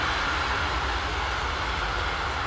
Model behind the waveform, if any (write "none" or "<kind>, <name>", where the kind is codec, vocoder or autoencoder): none